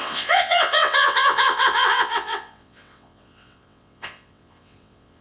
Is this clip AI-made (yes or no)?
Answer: yes